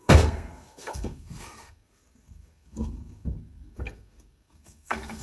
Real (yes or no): no